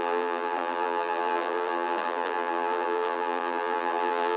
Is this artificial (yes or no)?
yes